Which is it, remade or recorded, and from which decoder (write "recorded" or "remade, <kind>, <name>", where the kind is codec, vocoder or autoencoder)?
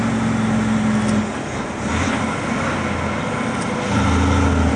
recorded